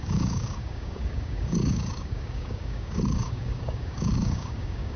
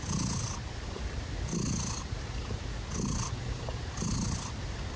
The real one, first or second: second